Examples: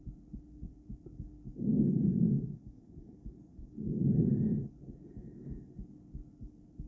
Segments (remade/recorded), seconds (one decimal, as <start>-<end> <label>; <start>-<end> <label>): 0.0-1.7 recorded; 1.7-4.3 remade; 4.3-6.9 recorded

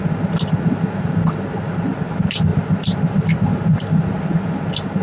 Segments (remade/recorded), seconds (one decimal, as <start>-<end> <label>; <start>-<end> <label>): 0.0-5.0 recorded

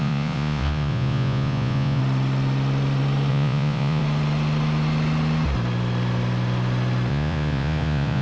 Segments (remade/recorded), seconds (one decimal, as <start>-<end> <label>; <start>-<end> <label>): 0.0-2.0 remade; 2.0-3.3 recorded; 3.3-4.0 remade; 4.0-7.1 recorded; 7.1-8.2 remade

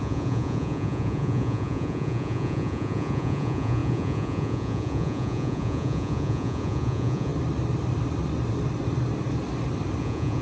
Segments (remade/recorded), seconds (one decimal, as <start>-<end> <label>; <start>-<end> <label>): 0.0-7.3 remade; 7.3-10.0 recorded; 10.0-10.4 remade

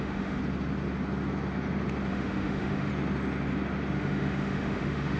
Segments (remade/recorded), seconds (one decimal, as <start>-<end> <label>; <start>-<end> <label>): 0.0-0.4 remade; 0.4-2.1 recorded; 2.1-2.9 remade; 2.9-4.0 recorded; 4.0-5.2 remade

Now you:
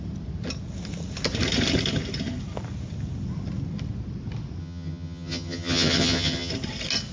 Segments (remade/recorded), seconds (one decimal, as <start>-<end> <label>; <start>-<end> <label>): 0.0-4.6 recorded; 4.6-6.5 remade; 6.5-7.1 recorded

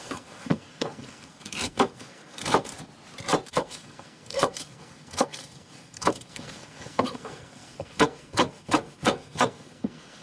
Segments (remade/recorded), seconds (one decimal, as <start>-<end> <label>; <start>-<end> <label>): 0.0-2.7 remade; 2.7-3.5 recorded; 3.5-10.2 remade

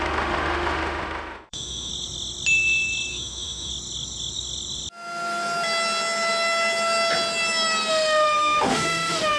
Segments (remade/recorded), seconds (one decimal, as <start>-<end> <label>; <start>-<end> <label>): 0.0-1.9 remade; 1.9-3.1 recorded; 3.1-3.7 remade; 3.7-7.9 recorded; 7.9-9.4 remade